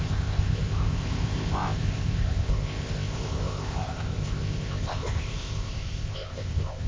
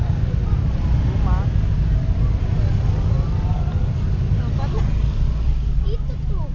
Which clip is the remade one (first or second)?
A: first